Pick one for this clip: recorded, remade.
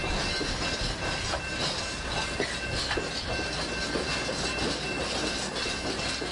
recorded